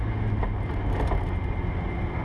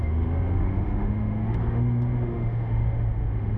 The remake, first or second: second